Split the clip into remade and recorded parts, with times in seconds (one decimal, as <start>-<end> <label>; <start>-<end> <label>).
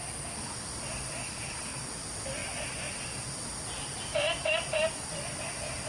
0.0-1.2 recorded; 1.2-1.8 remade; 1.8-5.9 recorded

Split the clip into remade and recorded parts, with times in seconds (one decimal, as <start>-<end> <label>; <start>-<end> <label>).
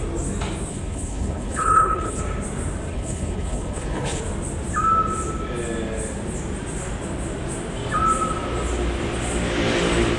0.0-0.7 recorded; 0.7-2.2 remade; 2.2-2.9 recorded; 2.9-4.2 remade; 4.2-10.2 recorded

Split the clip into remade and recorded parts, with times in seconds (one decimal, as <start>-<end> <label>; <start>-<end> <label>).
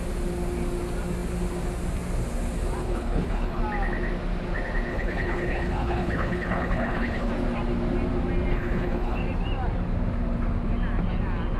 0.0-2.8 recorded; 2.8-3.6 remade; 3.6-4.9 recorded; 4.9-7.3 remade; 7.3-8.5 recorded; 8.5-9.2 remade; 9.2-11.6 recorded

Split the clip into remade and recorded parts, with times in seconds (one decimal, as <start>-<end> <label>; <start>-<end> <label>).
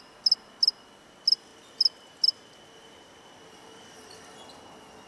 0.0-5.1 recorded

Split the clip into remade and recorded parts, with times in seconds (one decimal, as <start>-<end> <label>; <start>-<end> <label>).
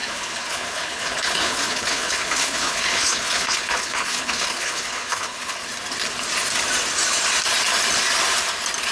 0.0-5.6 remade; 5.6-8.9 recorded